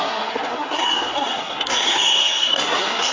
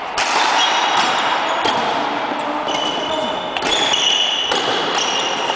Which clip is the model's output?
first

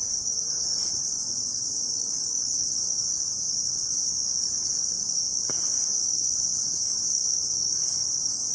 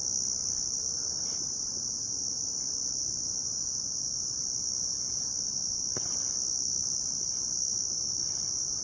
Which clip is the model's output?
first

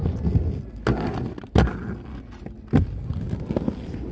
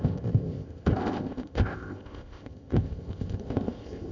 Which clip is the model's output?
second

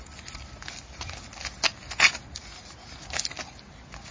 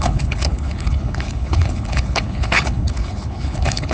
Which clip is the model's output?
second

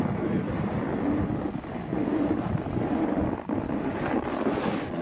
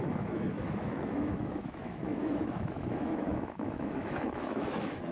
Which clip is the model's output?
second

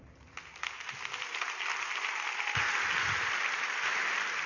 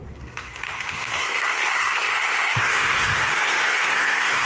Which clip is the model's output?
second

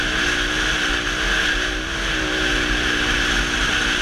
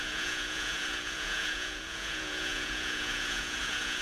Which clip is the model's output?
second